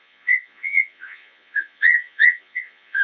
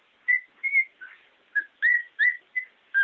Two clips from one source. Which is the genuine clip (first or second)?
second